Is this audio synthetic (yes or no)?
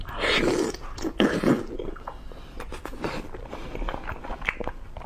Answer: no